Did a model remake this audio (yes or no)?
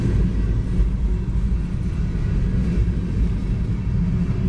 no